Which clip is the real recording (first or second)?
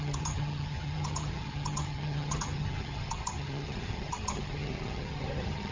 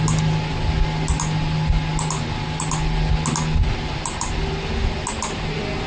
second